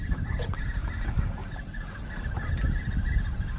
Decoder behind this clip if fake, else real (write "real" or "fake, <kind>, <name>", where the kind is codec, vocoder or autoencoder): real